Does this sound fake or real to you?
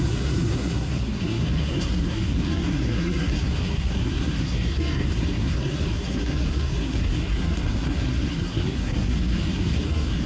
fake